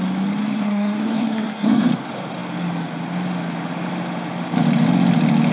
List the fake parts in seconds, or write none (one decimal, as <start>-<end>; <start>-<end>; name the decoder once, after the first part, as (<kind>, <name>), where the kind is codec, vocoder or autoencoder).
0.4-1.9 (codec, SNAC)